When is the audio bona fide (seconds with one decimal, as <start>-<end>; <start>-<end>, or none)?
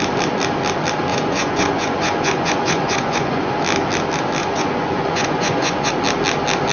0.0-1.1; 3.5-4.4; 5.9-6.7